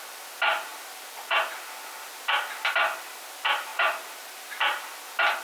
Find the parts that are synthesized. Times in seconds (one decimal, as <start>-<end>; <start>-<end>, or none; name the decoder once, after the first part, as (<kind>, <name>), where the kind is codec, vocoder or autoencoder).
3.7-4.9 (vocoder, BigVGAN v2)